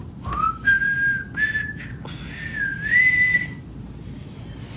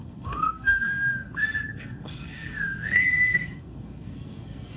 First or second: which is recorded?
first